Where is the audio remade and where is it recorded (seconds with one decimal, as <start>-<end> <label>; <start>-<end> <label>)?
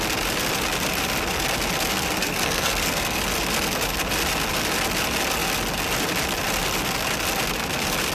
0.0-1.9 recorded; 1.9-3.2 remade; 3.2-8.1 recorded